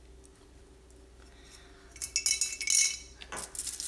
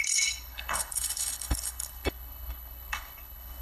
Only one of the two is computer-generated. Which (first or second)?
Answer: second